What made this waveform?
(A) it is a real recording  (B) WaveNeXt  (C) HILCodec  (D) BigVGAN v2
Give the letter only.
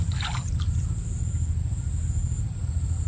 A